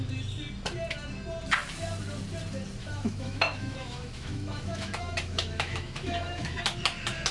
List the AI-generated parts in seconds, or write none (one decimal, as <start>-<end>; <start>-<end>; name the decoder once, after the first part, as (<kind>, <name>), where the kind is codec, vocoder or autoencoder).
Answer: 2.8-6.6 (autoencoder, DAC-VAE)